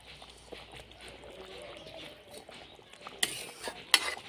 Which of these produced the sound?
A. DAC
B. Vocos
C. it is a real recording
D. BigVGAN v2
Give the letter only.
C